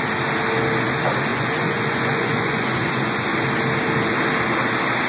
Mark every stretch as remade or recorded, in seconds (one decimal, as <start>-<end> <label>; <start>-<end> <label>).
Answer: 0.0-1.3 recorded; 1.3-3.3 remade; 3.3-5.1 recorded